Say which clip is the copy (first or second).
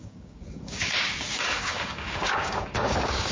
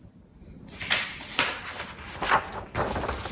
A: first